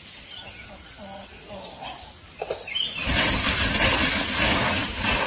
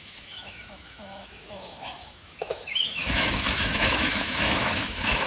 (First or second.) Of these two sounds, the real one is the first